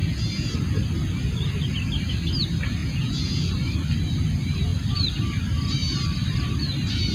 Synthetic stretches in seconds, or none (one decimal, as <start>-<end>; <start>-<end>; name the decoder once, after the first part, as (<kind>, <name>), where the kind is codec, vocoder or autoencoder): 0.0-0.5 (vocoder, Vocos); 2.8-3.4